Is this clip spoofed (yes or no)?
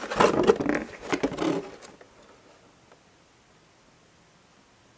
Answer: no